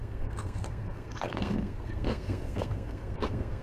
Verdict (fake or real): fake